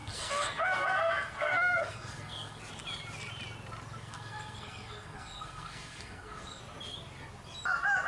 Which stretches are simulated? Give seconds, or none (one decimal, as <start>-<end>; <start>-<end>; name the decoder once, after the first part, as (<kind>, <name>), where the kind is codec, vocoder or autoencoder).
0.0-2.6 (codec, SNAC); 4.0-6.6